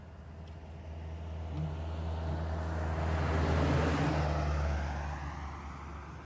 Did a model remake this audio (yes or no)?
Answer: no